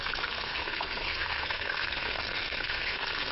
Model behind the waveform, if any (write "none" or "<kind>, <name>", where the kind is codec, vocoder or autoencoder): codec, SNAC